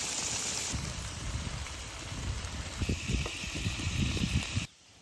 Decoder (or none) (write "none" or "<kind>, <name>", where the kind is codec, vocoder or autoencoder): vocoder, BigVGAN v2